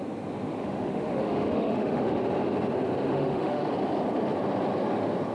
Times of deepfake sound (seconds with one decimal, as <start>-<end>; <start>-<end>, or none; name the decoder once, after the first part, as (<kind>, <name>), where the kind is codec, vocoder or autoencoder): 0.6-2.2 (autoencoder, DAC-VAE); 3.1-3.7